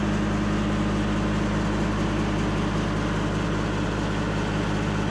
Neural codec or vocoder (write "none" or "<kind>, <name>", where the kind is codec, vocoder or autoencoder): none